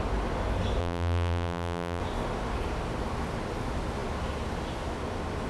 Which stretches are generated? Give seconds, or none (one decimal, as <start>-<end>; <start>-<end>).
0.8-2.0